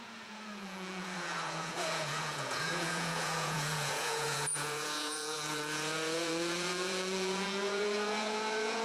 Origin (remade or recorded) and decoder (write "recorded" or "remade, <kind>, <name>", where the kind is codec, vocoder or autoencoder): remade, vocoder, Vocos